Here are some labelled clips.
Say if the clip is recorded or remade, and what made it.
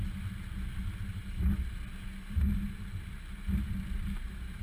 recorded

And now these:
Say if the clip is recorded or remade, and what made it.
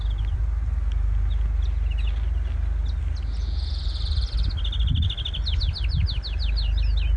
recorded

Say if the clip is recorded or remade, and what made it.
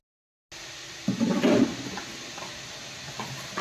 recorded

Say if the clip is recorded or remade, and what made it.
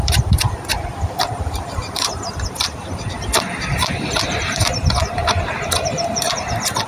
remade, vocoder, BigVGAN v2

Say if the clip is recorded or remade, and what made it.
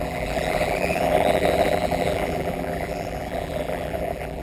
remade, vocoder, BigVGAN v2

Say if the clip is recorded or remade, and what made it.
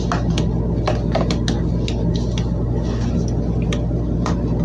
recorded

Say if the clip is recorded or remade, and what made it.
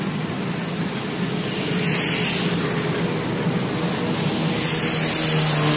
recorded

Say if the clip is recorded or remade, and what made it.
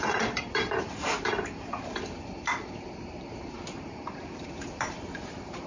remade, vocoder, BigVGAN v2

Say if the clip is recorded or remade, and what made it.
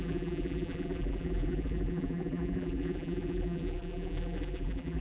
remade, vocoder, BigVGAN v2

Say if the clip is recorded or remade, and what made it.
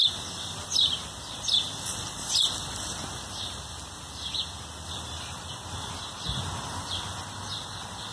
remade, vocoder, BigVGAN v2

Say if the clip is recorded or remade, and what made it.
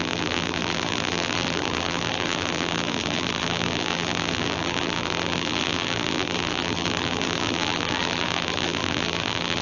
remade, vocoder, BigVGAN v2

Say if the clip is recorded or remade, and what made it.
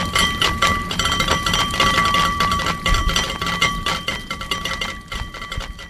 remade, vocoder, BigVGAN v2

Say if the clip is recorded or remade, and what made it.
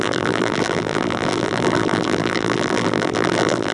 remade, vocoder, BigVGAN v2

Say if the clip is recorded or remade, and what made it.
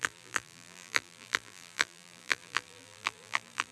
remade, vocoder, BigVGAN v2